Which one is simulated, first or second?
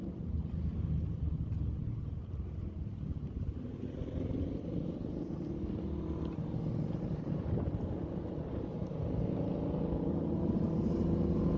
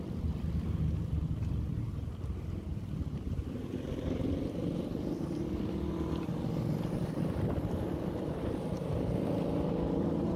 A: second